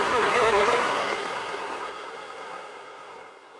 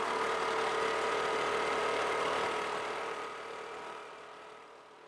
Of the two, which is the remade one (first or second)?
first